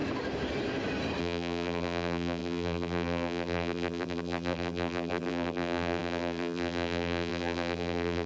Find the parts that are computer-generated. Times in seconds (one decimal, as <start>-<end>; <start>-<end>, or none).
1.2-8.3